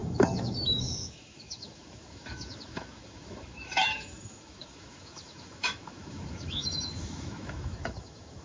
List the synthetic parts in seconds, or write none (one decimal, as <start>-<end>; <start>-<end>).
0.0-8.4